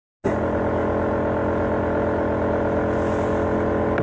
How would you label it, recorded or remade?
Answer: recorded